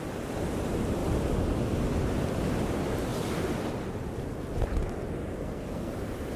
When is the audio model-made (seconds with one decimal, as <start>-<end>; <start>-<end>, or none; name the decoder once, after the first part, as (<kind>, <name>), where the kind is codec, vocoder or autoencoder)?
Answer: 5.3-5.9 (codec, SNAC)